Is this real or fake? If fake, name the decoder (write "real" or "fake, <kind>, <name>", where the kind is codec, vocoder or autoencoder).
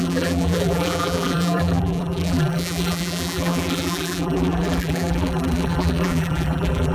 fake, vocoder, BigVGAN v2